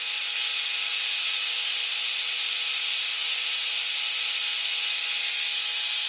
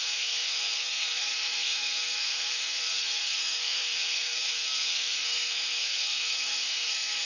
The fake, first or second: second